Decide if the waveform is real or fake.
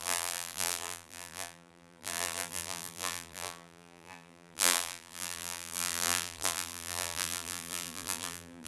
fake